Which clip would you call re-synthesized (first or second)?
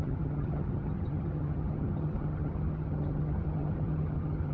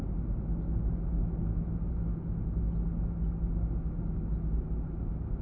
first